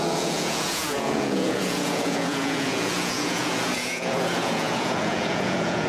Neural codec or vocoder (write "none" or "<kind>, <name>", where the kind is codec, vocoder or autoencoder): vocoder, Vocos